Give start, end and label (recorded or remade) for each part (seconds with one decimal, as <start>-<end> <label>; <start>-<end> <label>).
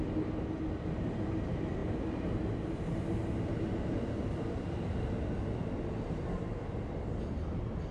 0.0-7.9 recorded